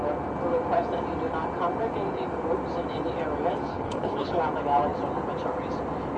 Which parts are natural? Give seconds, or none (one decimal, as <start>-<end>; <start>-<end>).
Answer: 0.0-3.7; 4.4-6.2